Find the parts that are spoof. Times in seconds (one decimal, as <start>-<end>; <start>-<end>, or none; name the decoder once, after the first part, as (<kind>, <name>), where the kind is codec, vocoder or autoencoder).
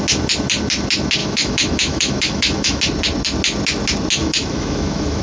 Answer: 1.2-2.8 (autoencoder, DAC-VAE); 4.2-5.2